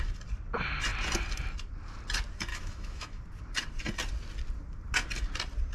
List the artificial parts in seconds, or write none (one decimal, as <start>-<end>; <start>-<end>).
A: 2.5-3.2